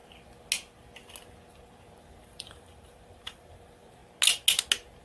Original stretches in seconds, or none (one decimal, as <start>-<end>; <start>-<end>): 0.0-1.9; 4.0-5.0